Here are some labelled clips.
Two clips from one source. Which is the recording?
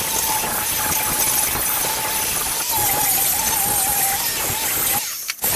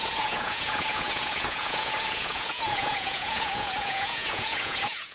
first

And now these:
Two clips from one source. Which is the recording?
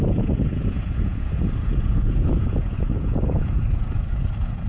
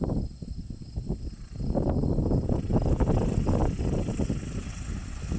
second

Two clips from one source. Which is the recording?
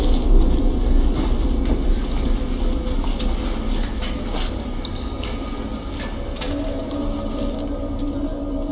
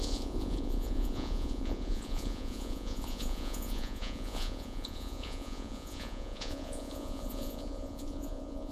first